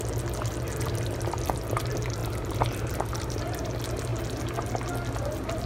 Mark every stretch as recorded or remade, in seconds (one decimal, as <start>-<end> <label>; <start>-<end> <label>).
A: 0.0-2.2 recorded; 2.2-3.4 remade; 3.4-5.7 recorded